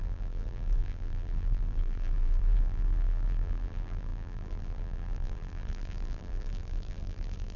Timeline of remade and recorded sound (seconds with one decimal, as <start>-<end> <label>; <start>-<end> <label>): 0.0-7.6 remade